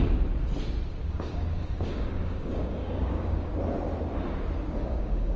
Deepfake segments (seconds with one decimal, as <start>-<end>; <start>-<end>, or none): 1.0-3.5; 4.8-5.4